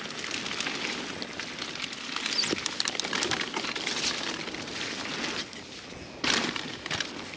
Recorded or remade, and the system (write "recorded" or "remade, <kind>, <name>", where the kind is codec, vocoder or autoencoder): recorded